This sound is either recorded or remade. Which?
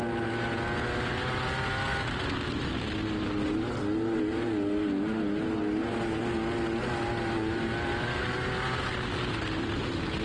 recorded